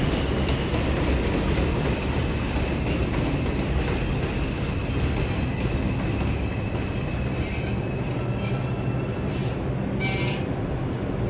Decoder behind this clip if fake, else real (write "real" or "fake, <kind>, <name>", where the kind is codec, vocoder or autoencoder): real